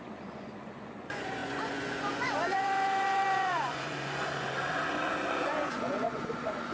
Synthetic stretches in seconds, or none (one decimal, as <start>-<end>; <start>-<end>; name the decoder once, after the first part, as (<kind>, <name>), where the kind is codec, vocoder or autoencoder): 0.0-6.7 (vocoder, Vocos)